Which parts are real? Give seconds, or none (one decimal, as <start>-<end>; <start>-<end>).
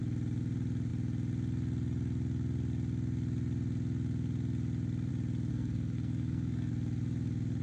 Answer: 0.0-5.5; 6.7-7.6